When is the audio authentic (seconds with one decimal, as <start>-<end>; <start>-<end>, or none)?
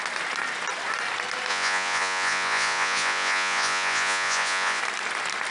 0.0-1.5; 4.8-5.5